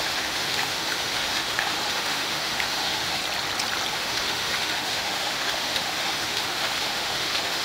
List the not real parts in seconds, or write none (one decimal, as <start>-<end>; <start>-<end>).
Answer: 0.0-3.2; 3.9-7.6

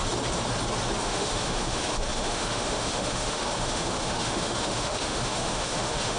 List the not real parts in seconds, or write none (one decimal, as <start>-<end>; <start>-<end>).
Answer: 1.0-6.2

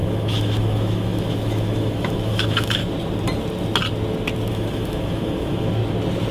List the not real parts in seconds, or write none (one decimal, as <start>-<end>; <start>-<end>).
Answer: 0.0-2.8; 4.5-5.8

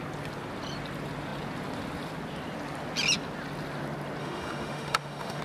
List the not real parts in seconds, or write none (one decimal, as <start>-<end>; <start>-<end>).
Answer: 4.2-5.4

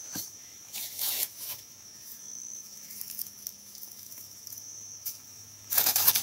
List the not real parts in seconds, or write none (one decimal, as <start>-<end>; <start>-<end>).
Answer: 0.0-6.2